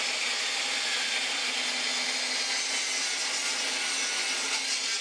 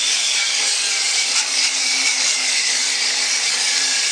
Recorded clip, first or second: first